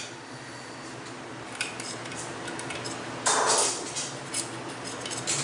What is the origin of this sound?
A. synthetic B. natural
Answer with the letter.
B